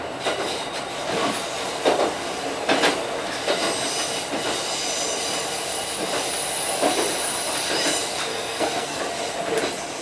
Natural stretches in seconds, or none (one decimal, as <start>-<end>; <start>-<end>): 0.0-8.3; 9.0-10.0